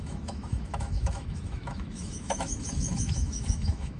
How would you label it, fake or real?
fake